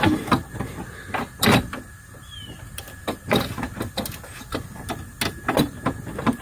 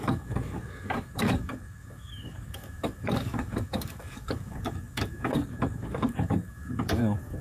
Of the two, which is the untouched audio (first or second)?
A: first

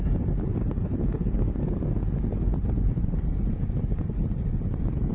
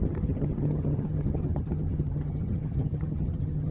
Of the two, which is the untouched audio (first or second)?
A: first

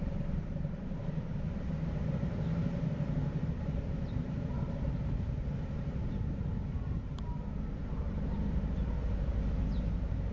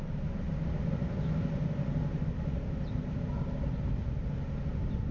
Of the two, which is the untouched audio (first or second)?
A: second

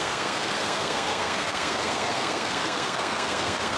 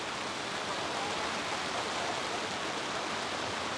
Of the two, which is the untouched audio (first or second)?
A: second